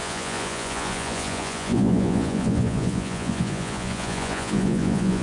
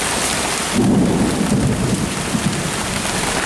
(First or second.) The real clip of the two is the second